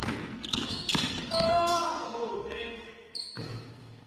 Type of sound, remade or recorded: remade